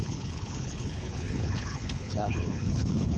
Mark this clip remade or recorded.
remade